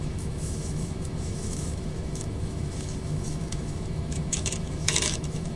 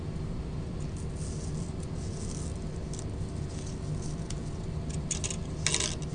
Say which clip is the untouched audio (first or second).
second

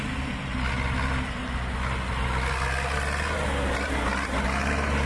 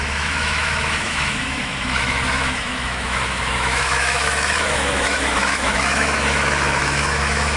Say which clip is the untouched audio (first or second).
first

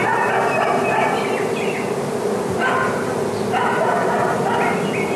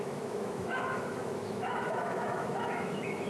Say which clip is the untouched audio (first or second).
first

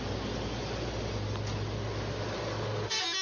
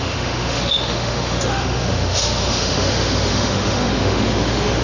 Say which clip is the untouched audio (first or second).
first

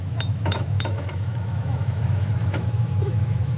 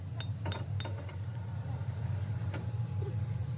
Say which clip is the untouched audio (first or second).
second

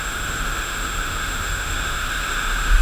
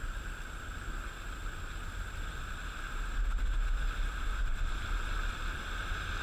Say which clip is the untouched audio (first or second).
second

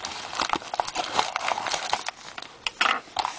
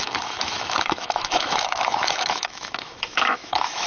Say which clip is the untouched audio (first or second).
first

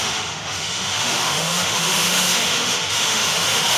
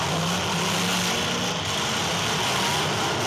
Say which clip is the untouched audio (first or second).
second